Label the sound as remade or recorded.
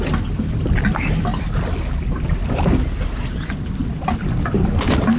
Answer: recorded